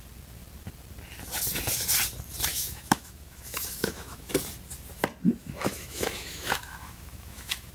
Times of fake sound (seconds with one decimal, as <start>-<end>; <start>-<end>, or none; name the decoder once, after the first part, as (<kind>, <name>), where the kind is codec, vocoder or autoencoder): 2.5-4.3 (autoencoder, DAC-VAE); 5.4-7.7